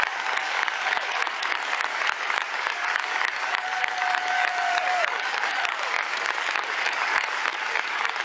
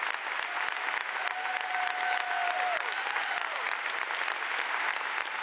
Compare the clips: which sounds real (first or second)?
second